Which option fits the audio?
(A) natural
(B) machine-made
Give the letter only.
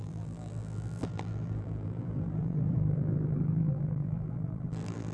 B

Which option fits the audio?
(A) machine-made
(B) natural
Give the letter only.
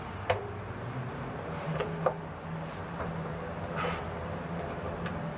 A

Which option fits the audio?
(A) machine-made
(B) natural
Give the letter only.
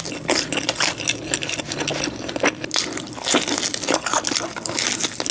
B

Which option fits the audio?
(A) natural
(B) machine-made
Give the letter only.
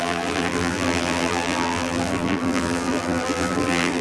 B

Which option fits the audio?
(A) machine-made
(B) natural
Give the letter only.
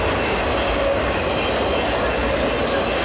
B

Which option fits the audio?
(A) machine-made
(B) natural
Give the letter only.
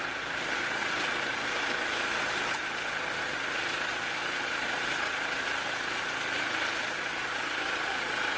A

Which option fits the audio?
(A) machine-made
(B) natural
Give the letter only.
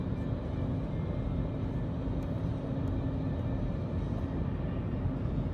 B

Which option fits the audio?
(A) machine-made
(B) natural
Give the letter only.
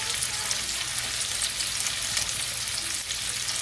B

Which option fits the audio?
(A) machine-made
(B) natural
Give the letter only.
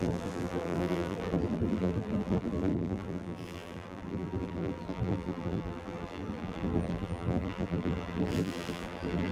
A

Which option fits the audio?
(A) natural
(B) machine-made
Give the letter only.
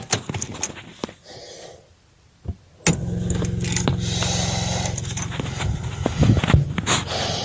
A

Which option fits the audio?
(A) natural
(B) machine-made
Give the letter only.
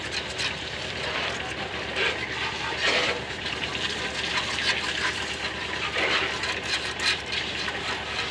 A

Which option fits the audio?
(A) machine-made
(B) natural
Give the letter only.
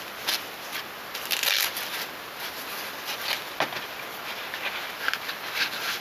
B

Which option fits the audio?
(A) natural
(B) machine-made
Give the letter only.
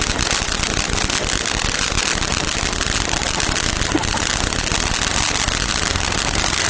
B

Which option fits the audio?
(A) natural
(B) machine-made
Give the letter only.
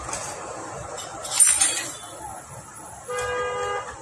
A